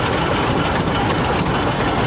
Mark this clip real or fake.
real